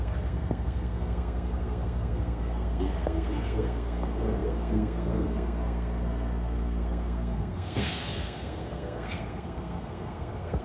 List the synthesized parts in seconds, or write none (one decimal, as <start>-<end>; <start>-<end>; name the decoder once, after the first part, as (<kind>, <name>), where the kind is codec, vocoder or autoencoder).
0.0-10.6 (codec, SNAC)